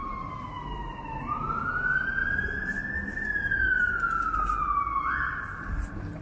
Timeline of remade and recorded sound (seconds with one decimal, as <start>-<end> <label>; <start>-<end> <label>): 0.0-6.2 recorded